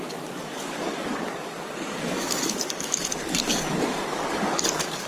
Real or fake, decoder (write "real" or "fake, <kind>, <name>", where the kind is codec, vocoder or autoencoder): fake, codec, DAC